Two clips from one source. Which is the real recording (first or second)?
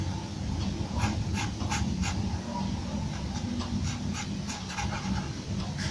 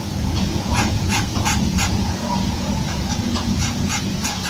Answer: first